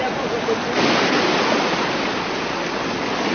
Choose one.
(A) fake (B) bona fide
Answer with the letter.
B